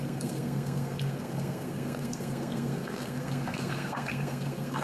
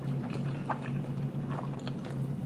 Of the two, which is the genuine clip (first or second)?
second